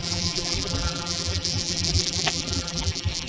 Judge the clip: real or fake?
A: fake